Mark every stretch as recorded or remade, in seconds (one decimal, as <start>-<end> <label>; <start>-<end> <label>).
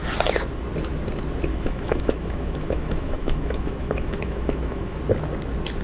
0.0-1.5 recorded; 1.5-5.0 remade; 5.0-5.8 recorded